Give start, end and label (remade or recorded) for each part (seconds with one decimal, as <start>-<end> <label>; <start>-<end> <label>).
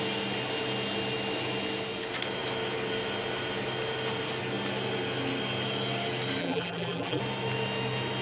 0.0-6.4 recorded; 6.4-7.2 remade; 7.2-8.2 recorded